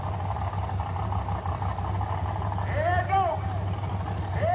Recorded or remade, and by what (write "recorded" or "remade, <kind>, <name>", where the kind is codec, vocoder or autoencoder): recorded